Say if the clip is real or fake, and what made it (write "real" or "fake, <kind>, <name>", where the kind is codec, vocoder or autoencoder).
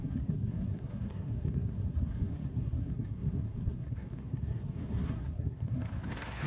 fake, codec, SNAC